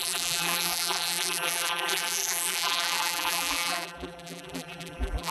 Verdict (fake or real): fake